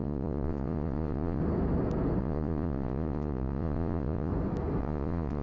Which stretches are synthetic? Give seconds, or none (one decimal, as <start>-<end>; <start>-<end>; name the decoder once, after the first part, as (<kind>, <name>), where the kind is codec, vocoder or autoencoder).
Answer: 0.0-1.4 (vocoder, Vocos); 2.2-4.3; 4.8-5.4